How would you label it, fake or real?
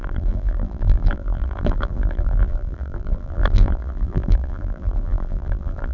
fake